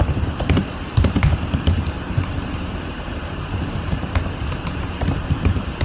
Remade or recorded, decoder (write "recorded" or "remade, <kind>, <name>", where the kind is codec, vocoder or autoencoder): remade, vocoder, BigVGAN v2